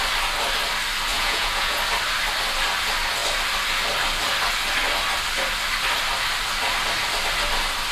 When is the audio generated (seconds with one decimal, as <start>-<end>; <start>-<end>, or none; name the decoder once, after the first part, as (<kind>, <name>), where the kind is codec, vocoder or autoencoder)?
1.1-1.8 (vocoder, Vocos)